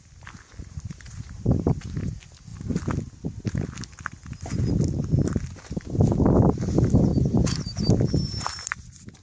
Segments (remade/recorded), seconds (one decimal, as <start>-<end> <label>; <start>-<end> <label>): 0.0-0.6 recorded; 0.6-1.7 remade; 1.7-7.1 recorded; 7.1-8.7 remade; 8.7-9.2 recorded